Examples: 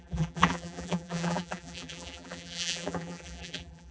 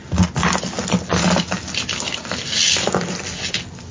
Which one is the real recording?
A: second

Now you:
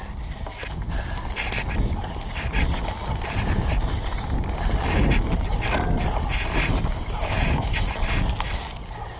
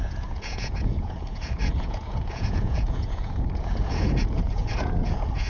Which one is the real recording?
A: first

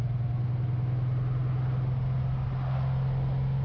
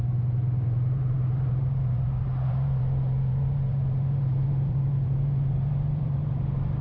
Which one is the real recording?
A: first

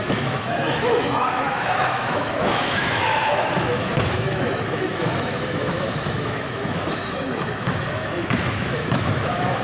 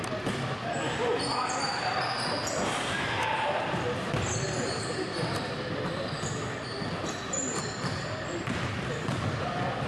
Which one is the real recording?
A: second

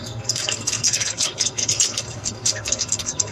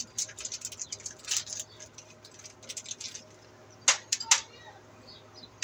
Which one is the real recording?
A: second